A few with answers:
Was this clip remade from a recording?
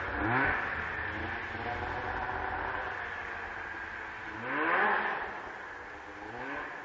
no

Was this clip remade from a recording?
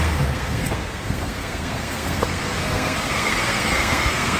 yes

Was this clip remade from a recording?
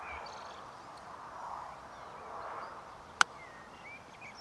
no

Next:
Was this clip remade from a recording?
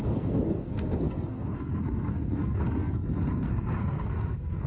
yes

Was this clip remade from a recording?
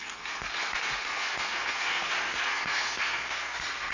yes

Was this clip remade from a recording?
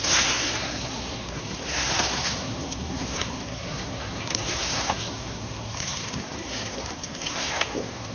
yes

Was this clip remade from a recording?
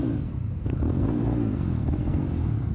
yes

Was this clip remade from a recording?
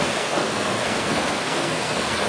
yes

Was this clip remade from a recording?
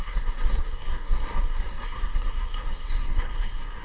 yes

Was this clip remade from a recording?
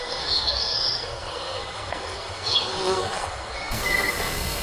yes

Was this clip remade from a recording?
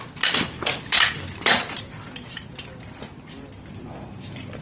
no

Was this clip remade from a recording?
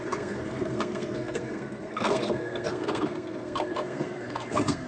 yes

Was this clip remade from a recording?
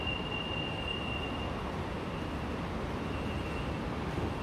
no